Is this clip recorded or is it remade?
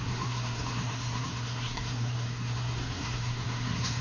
remade